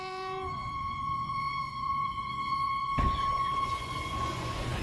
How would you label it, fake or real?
fake